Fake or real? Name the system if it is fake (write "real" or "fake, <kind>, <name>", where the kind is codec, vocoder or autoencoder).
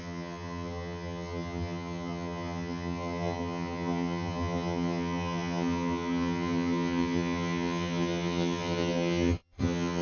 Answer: fake, vocoder, HiFi-GAN